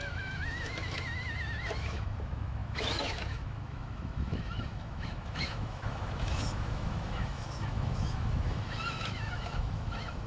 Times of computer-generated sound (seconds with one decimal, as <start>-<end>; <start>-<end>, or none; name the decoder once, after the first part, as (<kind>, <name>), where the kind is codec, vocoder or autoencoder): 0.0-10.3 (autoencoder, DAC-VAE)